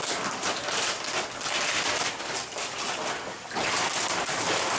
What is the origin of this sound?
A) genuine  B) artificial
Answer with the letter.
A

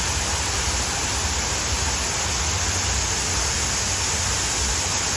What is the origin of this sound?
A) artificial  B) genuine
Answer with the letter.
B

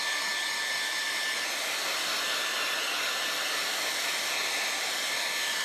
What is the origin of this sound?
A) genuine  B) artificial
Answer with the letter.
A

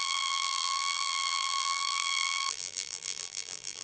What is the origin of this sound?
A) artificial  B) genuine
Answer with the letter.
A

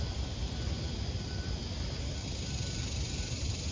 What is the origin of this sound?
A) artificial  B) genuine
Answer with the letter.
A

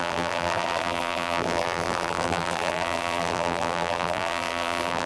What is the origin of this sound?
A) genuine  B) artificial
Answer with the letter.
B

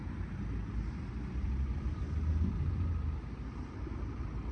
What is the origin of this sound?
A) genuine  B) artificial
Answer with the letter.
A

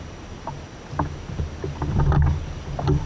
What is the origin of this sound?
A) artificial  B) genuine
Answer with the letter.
B